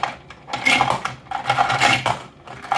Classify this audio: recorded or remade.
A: recorded